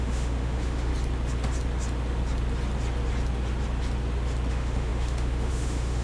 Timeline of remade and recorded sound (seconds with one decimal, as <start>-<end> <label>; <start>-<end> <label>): 0.0-0.9 remade; 0.9-4.5 recorded; 4.5-6.0 remade